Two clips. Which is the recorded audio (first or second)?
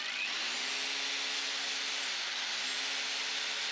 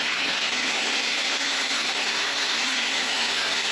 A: first